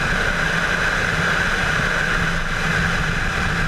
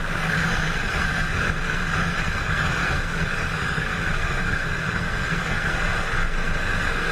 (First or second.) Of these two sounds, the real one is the first